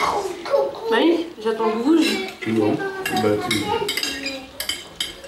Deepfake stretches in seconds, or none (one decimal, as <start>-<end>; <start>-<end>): none